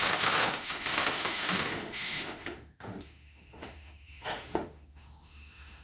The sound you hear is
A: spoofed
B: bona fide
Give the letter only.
A